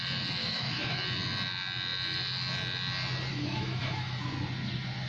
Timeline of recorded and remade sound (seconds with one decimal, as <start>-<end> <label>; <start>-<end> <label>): 0.0-0.4 recorded; 0.4-1.0 remade; 1.0-3.3 recorded; 3.3-4.2 remade; 4.2-5.1 recorded